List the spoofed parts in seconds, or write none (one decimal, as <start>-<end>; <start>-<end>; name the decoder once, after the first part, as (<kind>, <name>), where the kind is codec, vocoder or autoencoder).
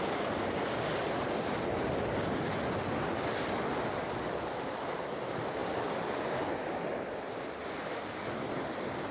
none